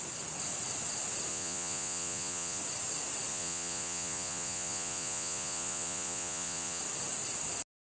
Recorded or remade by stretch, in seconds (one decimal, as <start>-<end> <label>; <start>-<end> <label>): 0.0-1.3 recorded; 1.3-2.6 remade; 2.6-3.3 recorded; 3.3-6.8 remade; 6.8-7.9 recorded